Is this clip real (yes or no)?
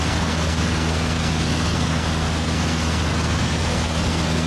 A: no